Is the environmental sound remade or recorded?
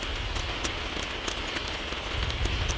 recorded